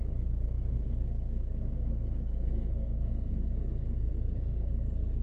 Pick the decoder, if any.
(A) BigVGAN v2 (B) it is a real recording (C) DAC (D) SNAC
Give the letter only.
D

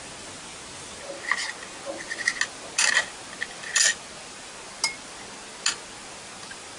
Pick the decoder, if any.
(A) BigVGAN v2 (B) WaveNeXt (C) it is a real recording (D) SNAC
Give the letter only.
C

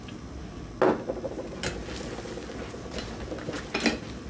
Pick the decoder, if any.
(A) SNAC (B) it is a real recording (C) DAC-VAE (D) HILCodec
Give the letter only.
B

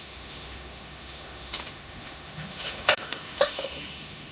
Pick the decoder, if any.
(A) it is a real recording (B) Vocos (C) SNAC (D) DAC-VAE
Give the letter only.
D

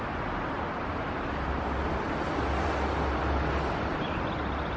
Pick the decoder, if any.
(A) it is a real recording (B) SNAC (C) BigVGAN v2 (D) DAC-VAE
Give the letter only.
A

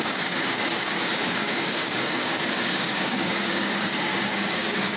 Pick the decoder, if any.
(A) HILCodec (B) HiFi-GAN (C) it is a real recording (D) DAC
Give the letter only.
D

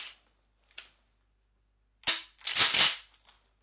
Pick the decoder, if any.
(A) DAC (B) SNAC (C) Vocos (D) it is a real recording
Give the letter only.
D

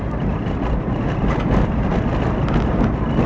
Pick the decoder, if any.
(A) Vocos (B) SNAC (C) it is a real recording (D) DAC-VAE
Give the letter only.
C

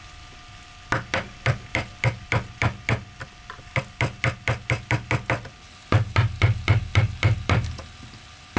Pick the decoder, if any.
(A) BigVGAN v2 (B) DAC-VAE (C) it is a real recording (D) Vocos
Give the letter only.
C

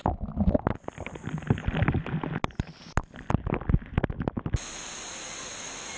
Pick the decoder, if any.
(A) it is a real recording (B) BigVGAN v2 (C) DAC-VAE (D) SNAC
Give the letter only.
A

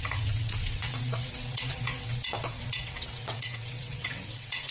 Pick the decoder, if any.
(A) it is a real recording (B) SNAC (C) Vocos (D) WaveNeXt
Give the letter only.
D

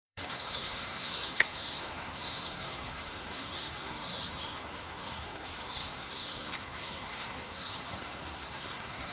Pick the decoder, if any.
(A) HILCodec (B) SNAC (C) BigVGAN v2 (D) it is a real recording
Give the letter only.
B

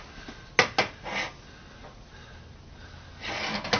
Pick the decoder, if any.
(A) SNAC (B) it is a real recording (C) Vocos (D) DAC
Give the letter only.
B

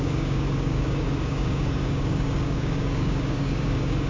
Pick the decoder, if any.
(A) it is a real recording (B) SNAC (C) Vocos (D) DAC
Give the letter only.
D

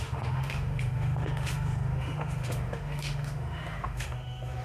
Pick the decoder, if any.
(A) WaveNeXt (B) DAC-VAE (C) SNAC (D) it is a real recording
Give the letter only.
B